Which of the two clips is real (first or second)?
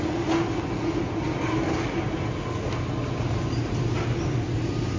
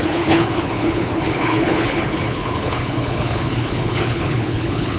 first